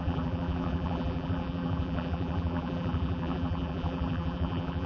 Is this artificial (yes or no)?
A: yes